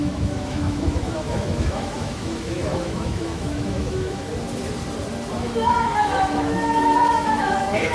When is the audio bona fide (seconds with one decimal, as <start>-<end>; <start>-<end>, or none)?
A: 4.3-5.4